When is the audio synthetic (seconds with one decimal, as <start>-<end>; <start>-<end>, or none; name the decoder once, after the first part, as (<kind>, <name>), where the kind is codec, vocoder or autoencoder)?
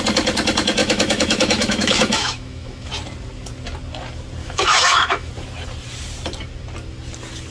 0.8-2.9 (autoencoder, DAC-VAE); 4.4-5.3